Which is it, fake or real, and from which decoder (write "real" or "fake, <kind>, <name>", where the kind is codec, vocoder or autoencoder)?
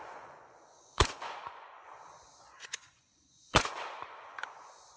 fake, vocoder, Vocos